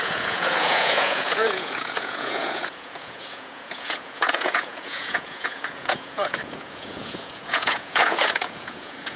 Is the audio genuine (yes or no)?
no